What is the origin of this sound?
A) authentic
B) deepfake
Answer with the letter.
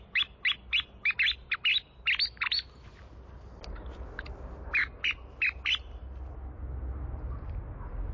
A